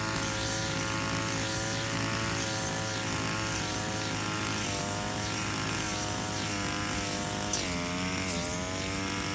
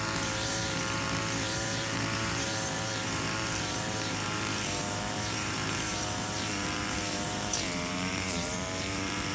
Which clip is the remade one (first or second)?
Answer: second